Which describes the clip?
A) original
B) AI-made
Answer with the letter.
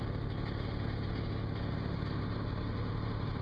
A